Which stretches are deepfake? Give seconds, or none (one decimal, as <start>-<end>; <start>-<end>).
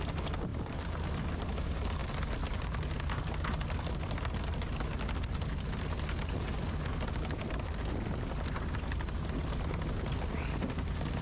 none